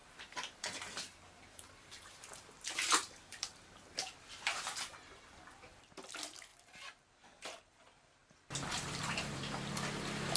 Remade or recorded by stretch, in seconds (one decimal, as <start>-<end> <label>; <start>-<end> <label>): 0.0-5.2 remade; 5.2-8.2 recorded; 8.2-9.7 remade; 9.7-10.4 recorded